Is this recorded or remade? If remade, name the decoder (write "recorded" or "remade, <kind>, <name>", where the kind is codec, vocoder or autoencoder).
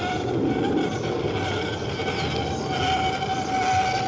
recorded